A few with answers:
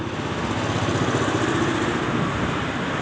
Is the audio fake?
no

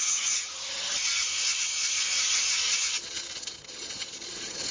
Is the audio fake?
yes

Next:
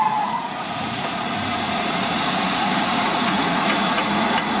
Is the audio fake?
yes